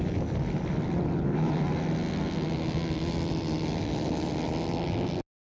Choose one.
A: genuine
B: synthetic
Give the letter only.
A